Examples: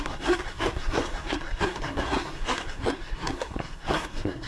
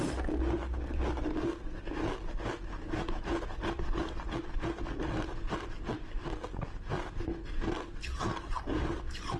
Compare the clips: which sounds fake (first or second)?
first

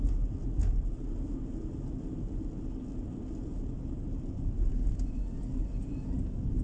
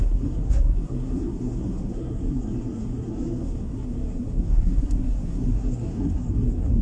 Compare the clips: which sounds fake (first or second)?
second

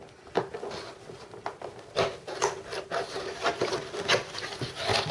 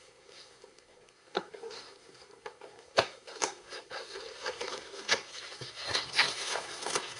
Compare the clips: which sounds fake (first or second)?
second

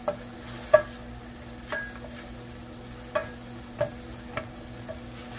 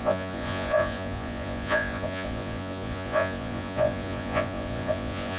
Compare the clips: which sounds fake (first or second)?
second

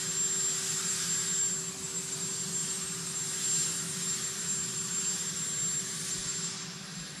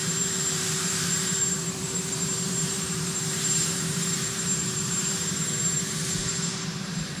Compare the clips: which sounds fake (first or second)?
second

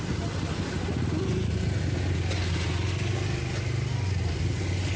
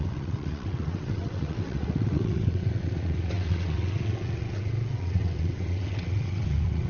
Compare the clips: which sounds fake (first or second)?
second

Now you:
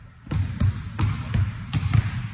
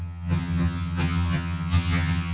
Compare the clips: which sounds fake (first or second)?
second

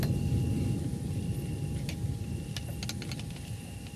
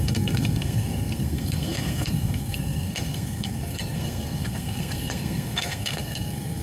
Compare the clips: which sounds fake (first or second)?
second